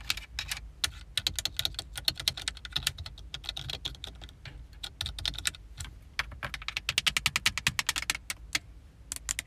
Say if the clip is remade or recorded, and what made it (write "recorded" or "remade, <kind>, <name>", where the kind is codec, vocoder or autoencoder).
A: recorded